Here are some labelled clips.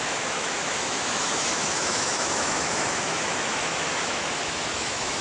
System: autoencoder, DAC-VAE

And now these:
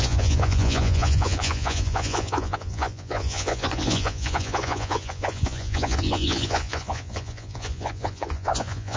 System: vocoder, Vocos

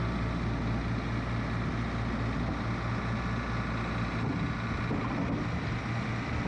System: none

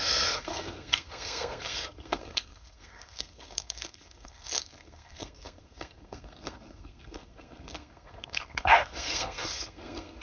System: codec, SNAC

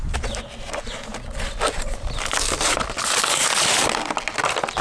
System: none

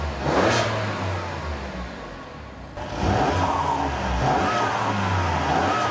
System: none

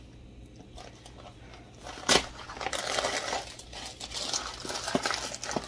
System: none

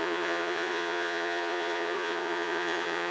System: vocoder, Vocos